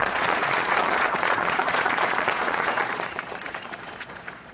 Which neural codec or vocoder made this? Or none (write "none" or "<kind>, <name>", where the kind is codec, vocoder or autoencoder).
vocoder, Vocos